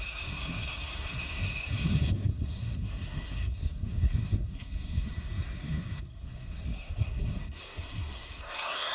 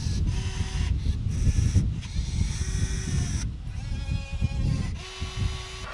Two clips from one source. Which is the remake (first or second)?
first